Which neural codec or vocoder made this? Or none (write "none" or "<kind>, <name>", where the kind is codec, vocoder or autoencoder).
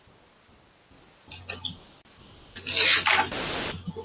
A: none